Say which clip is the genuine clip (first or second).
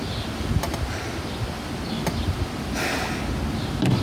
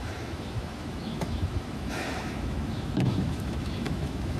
first